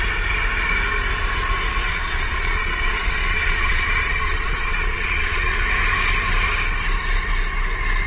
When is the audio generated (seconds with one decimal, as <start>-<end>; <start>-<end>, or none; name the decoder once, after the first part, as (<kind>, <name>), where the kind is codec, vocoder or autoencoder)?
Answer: 1.9-5.7 (vocoder, Vocos)